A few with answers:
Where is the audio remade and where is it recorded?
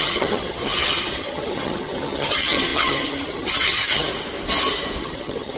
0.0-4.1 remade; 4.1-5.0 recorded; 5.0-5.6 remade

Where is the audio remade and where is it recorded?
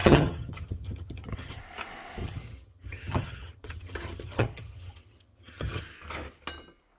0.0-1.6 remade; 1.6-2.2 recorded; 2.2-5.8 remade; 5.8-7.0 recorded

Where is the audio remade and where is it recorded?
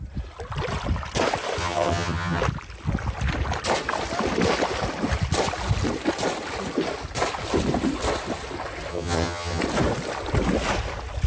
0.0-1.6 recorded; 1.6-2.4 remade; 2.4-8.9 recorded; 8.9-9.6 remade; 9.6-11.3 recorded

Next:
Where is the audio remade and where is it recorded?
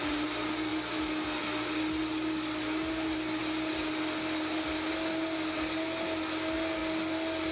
0.0-7.5 recorded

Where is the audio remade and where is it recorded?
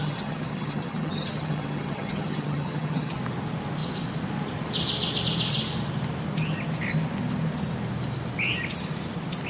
0.0-3.2 remade; 3.2-9.5 recorded